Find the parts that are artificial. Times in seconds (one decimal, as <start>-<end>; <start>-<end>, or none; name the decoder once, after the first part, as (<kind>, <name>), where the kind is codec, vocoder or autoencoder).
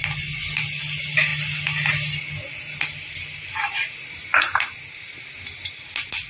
none